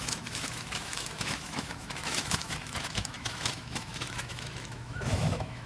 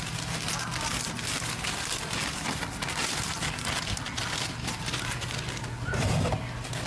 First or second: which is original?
second